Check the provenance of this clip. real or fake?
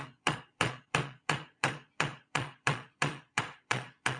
fake